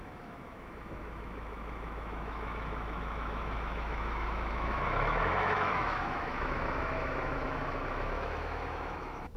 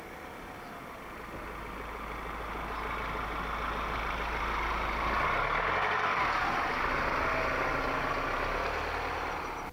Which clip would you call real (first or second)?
second